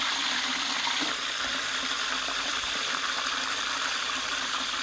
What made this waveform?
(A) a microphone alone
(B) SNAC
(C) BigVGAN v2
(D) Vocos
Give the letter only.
C